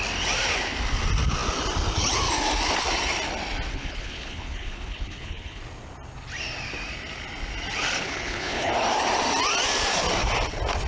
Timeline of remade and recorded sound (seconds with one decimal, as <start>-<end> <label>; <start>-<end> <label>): 0.0-3.7 recorded; 3.7-5.6 remade; 5.6-8.0 recorded; 8.0-8.7 remade; 8.7-10.9 recorded